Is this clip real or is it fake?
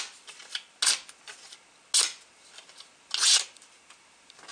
real